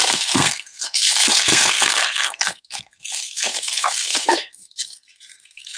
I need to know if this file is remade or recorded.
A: remade